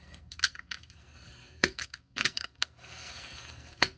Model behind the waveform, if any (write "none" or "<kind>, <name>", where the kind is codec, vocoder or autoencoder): codec, SNAC